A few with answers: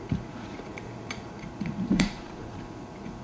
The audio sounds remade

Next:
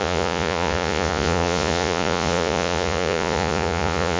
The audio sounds remade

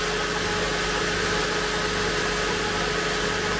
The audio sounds recorded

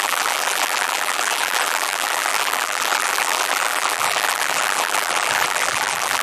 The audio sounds remade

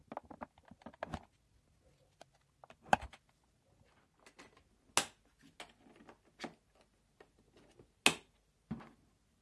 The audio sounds recorded